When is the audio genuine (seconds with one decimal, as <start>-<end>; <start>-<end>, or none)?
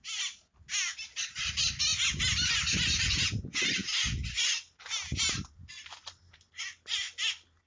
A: 0.0-7.7